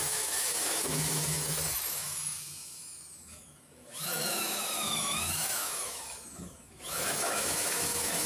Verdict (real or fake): fake